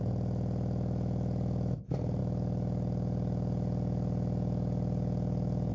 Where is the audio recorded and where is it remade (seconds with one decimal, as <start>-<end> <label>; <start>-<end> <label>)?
0.0-5.7 remade